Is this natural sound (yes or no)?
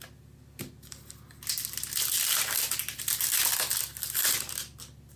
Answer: yes